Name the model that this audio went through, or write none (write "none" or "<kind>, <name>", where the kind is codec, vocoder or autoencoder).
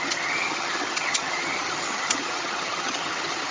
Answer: vocoder, HiFi-GAN